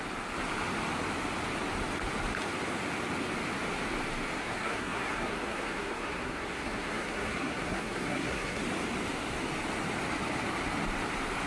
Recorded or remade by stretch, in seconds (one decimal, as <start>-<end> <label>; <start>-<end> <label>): 0.0-4.4 recorded; 4.4-8.6 remade; 8.6-11.5 recorded